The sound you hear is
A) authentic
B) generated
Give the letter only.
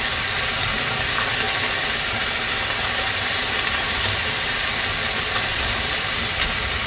A